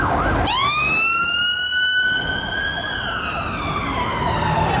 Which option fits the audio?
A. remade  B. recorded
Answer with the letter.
B